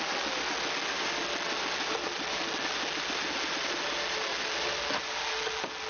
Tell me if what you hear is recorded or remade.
recorded